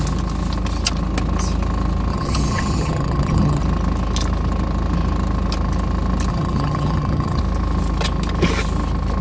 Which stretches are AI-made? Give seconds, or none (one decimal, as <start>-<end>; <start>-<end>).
2.1-3.6; 6.3-7.4